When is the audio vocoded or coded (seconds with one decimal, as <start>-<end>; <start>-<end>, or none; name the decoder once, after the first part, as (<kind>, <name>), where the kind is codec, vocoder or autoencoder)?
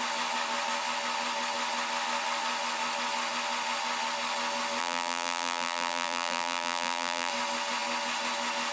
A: 4.8-7.3 (vocoder, BigVGAN v2)